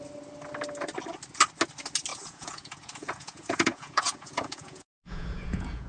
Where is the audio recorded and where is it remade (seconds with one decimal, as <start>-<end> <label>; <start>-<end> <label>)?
0.0-2.1 recorded; 2.1-5.9 remade